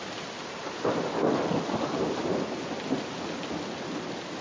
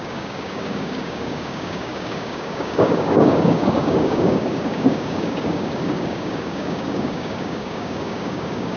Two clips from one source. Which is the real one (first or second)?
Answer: first